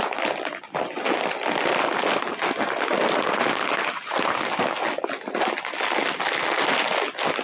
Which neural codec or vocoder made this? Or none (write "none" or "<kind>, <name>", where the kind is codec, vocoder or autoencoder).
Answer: none